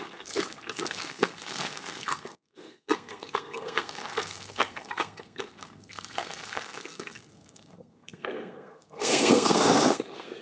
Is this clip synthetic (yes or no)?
yes